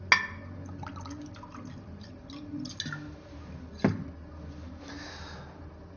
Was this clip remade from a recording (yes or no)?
no